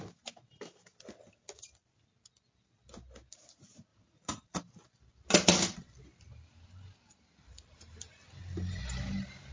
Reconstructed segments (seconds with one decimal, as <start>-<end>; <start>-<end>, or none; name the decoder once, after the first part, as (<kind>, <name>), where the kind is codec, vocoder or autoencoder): 3.9-4.6 (vocoder, Vocos)